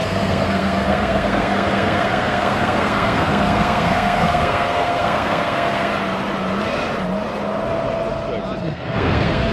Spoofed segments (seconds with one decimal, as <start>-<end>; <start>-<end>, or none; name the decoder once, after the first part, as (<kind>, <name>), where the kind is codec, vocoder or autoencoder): 0.0-5.9 (codec, SNAC); 8.6-9.5